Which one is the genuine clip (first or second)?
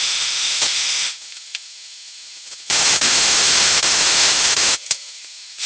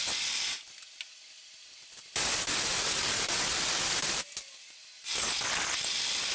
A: second